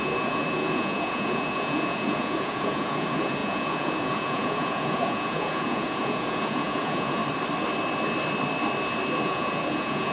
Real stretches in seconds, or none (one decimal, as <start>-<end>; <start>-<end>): 7.2-9.2